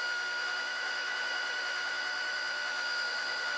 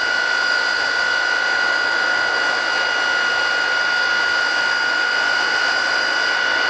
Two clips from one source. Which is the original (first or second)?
second